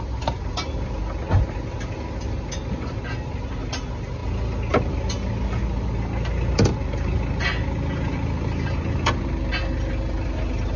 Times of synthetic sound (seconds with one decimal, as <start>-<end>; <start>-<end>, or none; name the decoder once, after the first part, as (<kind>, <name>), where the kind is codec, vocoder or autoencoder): none